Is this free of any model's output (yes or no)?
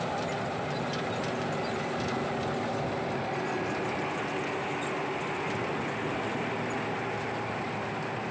yes